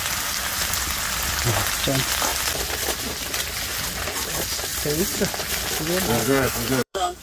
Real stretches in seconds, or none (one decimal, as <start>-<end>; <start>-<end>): 0.0-6.2